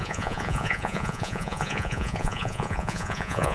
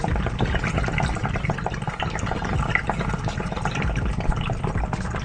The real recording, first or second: second